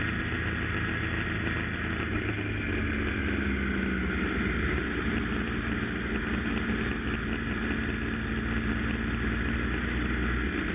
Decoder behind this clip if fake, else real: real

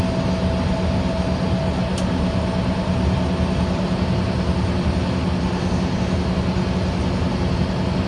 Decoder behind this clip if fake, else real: real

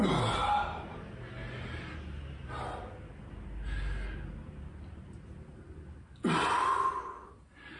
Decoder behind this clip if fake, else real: real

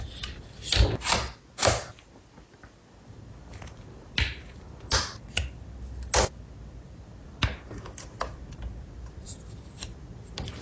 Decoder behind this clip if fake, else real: real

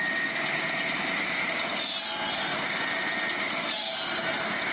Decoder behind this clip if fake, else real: real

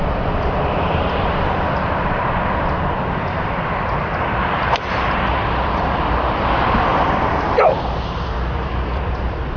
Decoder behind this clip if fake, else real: fake, vocoder, BigVGAN v2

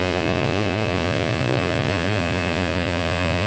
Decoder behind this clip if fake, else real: fake, vocoder, Vocos